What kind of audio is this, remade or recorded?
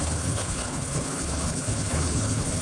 remade